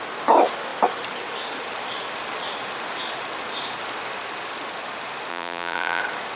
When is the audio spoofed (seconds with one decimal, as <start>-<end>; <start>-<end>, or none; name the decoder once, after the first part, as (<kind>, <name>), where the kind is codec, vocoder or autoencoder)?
5.3-6.0 (vocoder, BigVGAN v2)